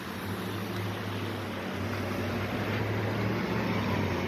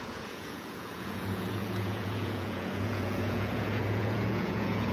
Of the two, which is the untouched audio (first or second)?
first